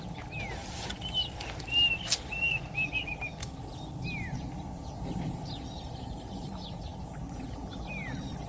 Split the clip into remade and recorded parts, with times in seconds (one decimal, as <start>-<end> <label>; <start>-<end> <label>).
0.0-8.5 recorded